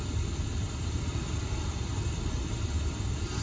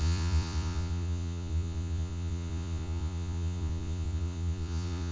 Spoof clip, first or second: second